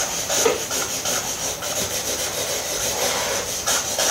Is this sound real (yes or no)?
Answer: yes